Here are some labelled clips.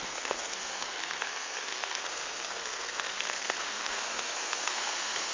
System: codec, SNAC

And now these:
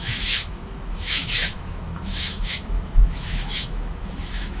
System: autoencoder, DAC-VAE